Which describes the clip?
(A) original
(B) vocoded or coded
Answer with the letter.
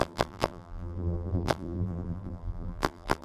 B